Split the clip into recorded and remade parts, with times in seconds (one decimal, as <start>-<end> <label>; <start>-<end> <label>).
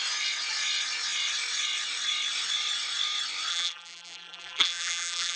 0.0-3.5 recorded; 3.5-5.4 remade